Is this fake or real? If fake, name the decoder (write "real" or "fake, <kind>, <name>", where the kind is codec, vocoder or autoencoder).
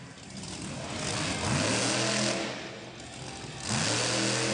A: real